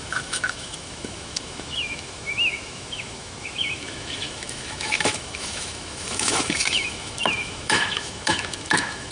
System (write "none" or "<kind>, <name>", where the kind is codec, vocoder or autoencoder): autoencoder, DAC-VAE